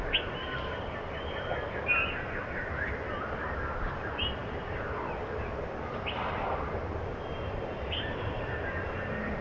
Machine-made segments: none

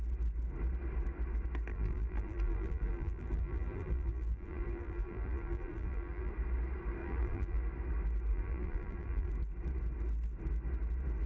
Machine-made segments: 1.7-6.3; 7.0-7.6; 8.3-9.3

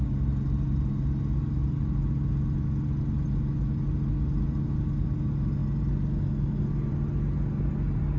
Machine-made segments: none

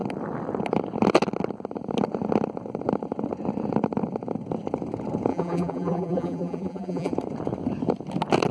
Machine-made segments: 5.3-7.1

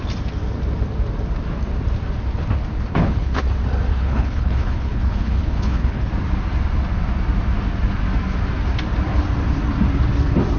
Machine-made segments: 2.9-3.4; 3.9-6.1

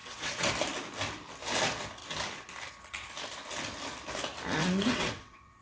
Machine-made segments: 0.0-0.5; 4.6-5.6